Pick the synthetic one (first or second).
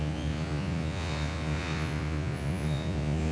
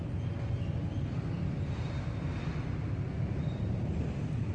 first